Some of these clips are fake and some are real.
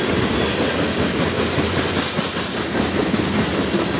real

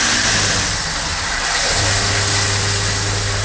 real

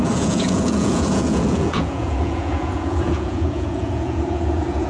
fake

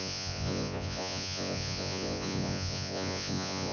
fake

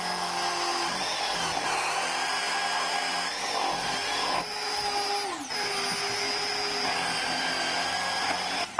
real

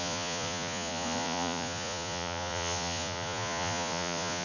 fake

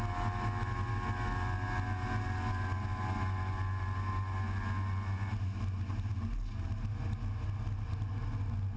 real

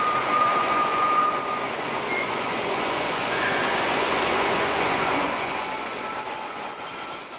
fake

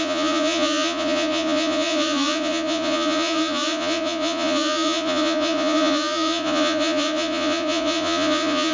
fake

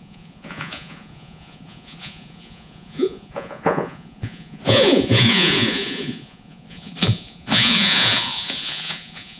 fake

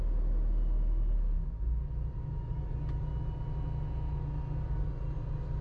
real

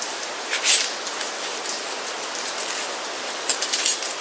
real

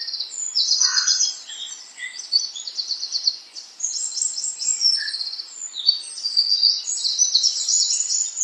fake